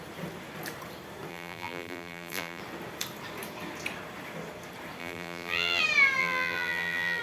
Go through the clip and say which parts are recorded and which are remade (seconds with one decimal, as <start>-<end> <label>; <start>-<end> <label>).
0.0-1.3 recorded; 1.3-2.6 remade; 2.6-5.0 recorded; 5.0-5.8 remade; 5.8-6.2 recorded; 6.2-7.2 remade